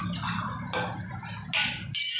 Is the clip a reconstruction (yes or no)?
no